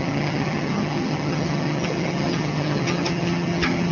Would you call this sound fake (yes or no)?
yes